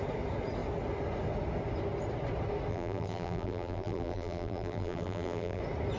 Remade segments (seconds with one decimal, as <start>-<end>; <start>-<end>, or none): 2.7-5.6